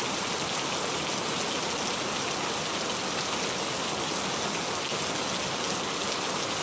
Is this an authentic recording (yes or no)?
yes